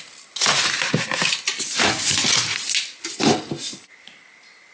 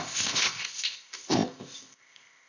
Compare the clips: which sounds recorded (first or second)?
first